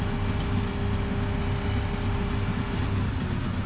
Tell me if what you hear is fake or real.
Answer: real